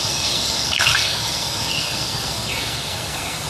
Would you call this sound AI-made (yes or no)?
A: yes